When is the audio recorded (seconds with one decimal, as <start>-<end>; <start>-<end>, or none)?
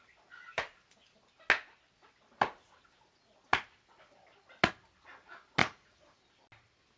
0.0-5.6; 6.2-7.0